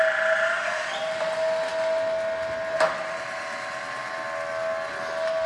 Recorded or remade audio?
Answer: recorded